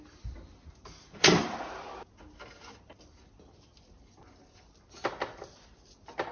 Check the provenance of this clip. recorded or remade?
recorded